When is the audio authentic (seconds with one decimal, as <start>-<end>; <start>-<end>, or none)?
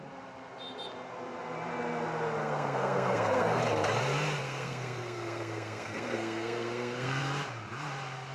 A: 0.0-2.4; 3.6-4.4; 7.2-8.3